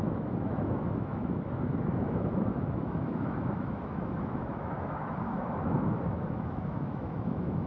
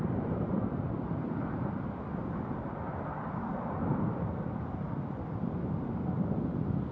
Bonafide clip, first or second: second